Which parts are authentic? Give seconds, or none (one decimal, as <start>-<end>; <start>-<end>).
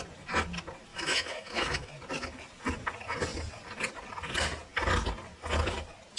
0.0-0.9; 1.9-6.2